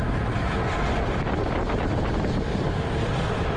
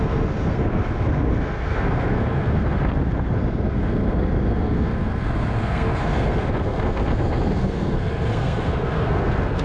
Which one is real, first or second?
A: first